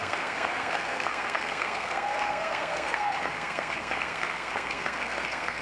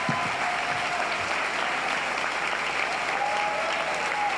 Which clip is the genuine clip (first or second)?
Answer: second